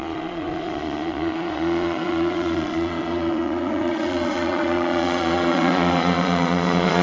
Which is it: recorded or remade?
remade